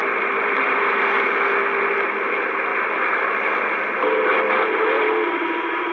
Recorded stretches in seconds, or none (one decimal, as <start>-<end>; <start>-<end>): 0.8-2.7